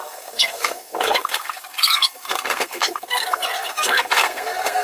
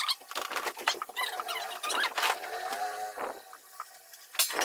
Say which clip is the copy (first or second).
first